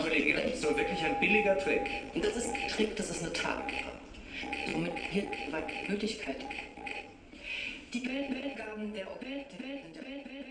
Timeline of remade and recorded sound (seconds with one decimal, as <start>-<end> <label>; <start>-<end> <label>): 0.0-0.5 remade; 0.5-2.0 recorded; 2.0-10.5 remade

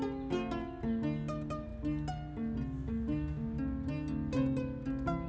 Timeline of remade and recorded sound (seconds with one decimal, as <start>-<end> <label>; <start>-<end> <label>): 0.0-5.3 recorded